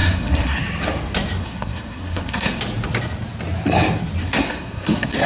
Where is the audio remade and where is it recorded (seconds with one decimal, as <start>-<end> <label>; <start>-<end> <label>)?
0.0-0.6 remade; 0.6-1.4 recorded; 1.4-2.6 remade; 2.6-4.2 recorded; 4.2-5.3 remade